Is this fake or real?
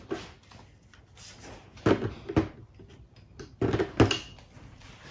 real